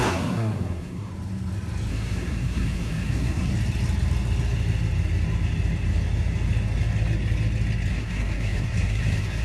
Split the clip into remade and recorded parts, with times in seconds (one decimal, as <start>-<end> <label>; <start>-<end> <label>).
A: 0.0-1.1 remade; 1.1-1.9 recorded; 1.9-3.5 remade; 3.5-7.9 recorded; 7.9-9.4 remade